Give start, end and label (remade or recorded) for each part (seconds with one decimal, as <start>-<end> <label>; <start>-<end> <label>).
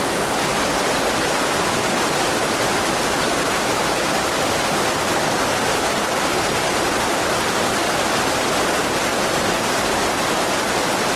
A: 0.0-9.1 recorded; 9.1-9.9 remade; 9.9-11.2 recorded